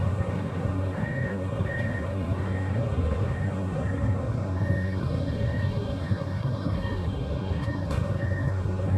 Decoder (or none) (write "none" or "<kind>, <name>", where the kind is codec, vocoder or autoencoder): codec, SNAC